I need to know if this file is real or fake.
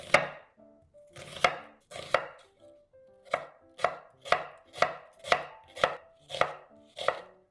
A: real